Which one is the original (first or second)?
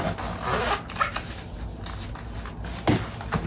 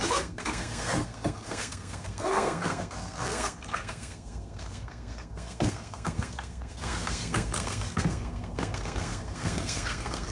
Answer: first